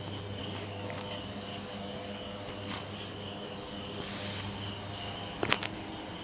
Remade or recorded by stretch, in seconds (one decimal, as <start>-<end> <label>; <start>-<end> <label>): 0.0-0.4 recorded; 0.4-4.1 remade; 4.1-6.2 recorded